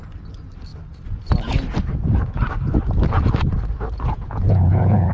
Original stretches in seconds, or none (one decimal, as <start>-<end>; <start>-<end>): 0.0-4.1